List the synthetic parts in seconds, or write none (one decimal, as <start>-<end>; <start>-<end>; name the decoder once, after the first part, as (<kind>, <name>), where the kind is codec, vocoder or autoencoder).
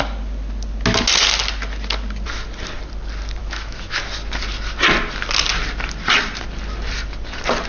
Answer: 3.4-4.0 (autoencoder, DAC-VAE)